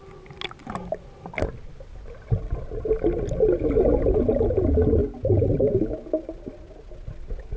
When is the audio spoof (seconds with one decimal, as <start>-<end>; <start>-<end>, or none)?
none